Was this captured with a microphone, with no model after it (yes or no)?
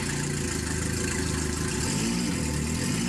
yes